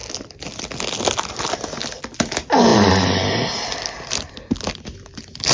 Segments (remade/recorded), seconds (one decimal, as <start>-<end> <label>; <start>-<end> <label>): 0.0-5.5 recorded